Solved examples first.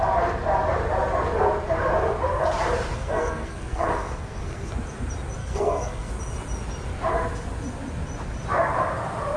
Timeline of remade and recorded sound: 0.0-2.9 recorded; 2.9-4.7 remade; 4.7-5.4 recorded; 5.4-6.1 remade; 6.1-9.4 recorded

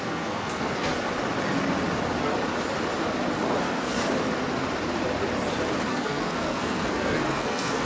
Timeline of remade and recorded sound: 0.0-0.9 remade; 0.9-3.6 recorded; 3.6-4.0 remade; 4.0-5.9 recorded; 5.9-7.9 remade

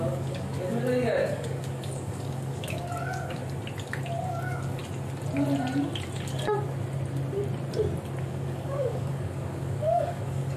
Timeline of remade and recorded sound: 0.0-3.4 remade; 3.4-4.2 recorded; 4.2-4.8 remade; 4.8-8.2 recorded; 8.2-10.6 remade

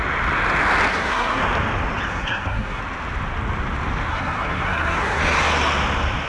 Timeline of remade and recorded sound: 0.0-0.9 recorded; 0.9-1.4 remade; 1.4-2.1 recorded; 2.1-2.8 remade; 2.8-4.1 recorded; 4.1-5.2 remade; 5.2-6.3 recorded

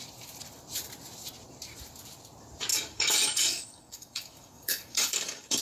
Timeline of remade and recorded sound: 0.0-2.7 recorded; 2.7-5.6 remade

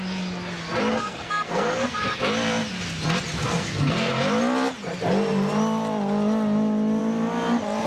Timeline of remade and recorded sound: 0.0-0.9 recorded; 0.9-2.2 remade; 2.2-3.4 recorded; 3.4-4.1 remade; 4.1-7.9 recorded

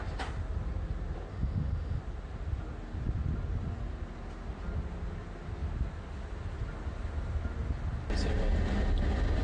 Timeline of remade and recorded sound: 0.0-1.3 recorded; 1.3-2.0 remade; 2.0-9.4 recorded

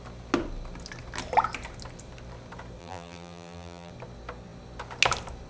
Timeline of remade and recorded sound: 0.0-2.8 recorded; 2.8-3.9 remade; 3.9-5.5 recorded